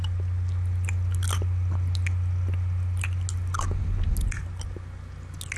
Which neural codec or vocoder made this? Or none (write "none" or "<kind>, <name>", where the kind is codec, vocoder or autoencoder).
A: none